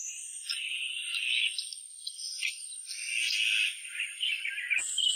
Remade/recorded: recorded